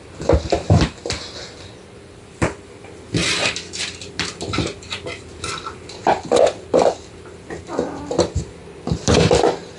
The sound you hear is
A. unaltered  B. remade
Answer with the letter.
B